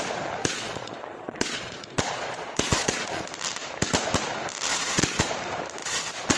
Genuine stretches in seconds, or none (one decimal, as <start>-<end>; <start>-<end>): 0.0-0.4; 3.3-4.7; 5.3-5.8